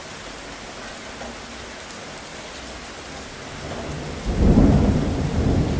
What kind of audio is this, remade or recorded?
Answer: recorded